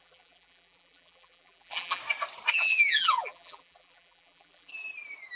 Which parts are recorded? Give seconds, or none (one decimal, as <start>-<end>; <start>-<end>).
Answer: 2.0-2.5; 4.7-5.4